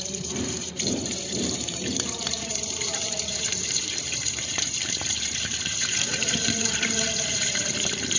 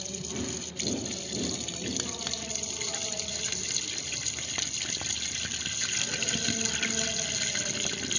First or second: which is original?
second